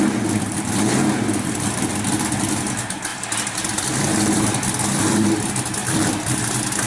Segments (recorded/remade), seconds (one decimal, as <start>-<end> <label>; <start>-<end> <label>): 0.0-3.1 recorded; 3.1-3.8 remade; 3.8-5.8 recorded; 5.8-6.4 remade; 6.4-6.9 recorded